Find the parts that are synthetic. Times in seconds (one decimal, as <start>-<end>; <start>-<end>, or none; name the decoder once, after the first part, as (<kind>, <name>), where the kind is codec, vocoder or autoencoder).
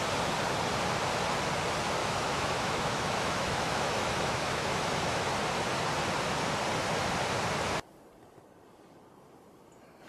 2.0-5.3 (autoencoder, DAC-VAE)